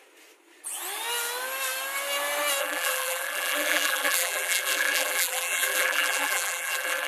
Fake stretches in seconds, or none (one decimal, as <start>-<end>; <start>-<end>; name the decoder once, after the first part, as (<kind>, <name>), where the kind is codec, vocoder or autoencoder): 2.6-7.1 (vocoder, BigVGAN v2)